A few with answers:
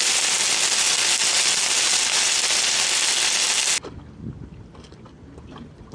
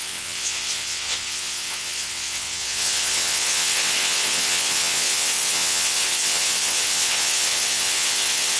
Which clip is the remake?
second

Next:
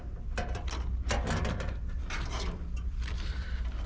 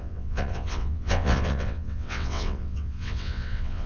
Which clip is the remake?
second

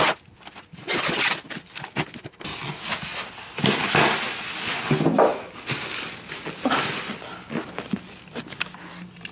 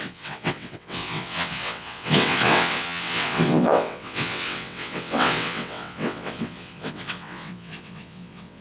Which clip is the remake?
second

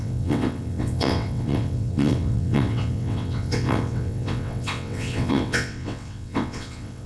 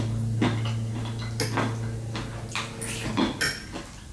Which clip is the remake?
first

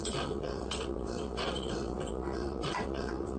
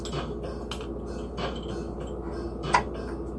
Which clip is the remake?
first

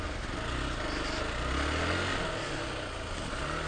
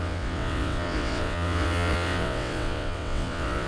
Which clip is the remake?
second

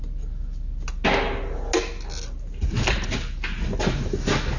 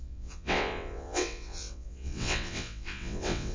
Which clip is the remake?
second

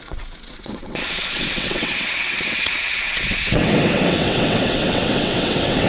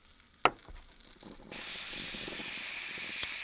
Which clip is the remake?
first